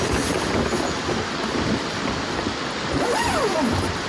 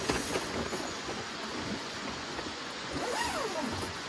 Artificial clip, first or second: second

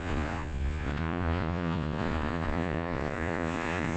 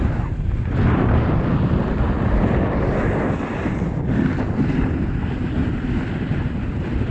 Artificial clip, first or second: first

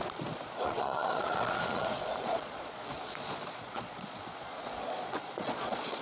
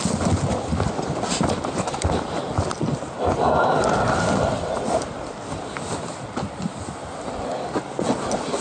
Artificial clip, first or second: first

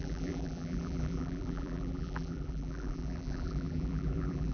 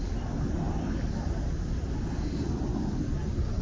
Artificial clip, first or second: first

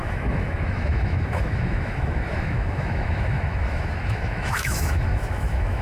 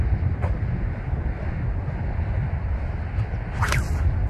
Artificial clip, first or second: first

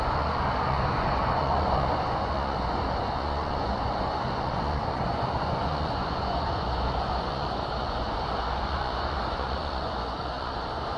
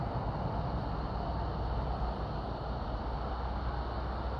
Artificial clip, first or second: first